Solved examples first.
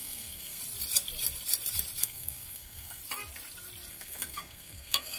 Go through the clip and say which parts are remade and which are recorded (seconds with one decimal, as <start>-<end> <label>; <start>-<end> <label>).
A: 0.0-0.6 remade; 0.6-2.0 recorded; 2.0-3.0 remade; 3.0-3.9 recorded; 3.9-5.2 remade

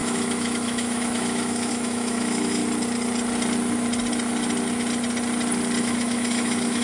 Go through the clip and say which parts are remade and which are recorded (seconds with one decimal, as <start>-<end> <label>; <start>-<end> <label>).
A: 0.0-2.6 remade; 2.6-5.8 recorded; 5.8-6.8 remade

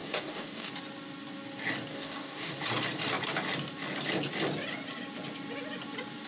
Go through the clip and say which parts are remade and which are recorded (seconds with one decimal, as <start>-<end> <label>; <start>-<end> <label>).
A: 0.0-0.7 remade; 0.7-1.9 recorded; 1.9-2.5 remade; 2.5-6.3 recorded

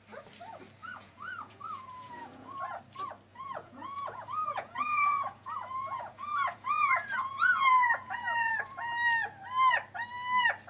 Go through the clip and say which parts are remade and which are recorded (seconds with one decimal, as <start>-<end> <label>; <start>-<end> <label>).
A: 0.0-0.8 recorded; 0.8-2.8 remade; 2.8-3.3 recorded; 3.3-8.5 remade; 8.5-10.7 recorded